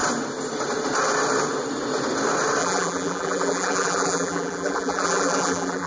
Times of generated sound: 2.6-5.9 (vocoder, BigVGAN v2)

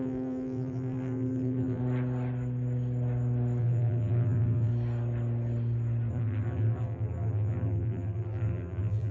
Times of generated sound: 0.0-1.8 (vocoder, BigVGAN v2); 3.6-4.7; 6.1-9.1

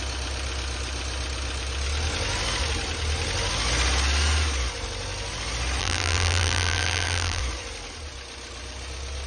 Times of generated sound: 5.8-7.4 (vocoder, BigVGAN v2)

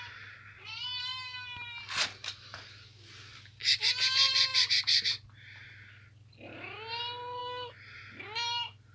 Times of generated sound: none

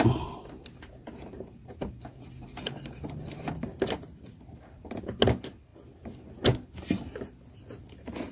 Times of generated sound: 1.0-1.9 (vocoder, BigVGAN v2)

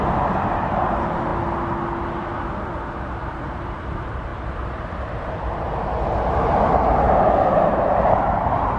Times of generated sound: 0.0-1.3 (vocoder, BigVGAN v2); 2.6-8.8

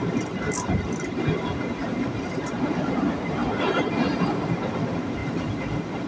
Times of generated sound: 1.8-2.5 (vocoder, BigVGAN v2); 5.2-6.1

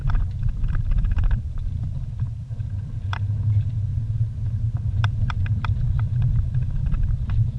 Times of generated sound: 0.7-3.9 (vocoder, BigVGAN v2); 4.6-7.6